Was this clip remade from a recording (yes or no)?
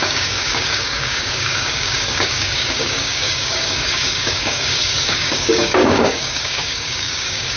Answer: yes